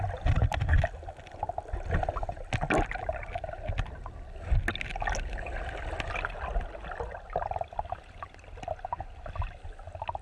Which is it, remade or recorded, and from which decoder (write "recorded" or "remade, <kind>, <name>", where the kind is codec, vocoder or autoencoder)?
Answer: recorded